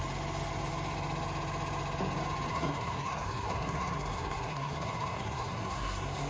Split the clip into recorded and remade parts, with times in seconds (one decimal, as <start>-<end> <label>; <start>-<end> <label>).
0.0-2.5 recorded; 2.5-6.3 remade